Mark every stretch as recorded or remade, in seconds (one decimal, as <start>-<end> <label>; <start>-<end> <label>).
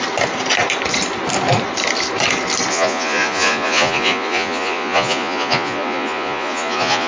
0.0-2.7 recorded; 2.7-7.1 remade